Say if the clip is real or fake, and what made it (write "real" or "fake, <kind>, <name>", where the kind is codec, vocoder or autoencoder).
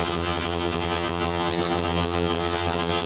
fake, vocoder, HiFi-GAN